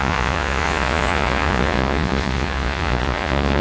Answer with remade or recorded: remade